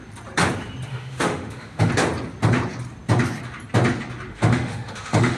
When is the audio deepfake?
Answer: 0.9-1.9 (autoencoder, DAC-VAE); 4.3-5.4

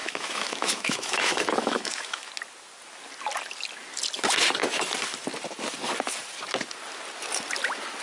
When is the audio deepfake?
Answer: 0.0-2.3 (autoencoder, DAC-VAE)